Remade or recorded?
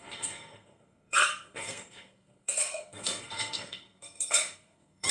remade